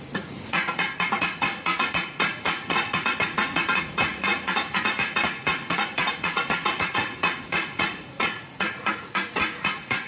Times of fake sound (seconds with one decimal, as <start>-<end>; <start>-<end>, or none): 0.0-10.1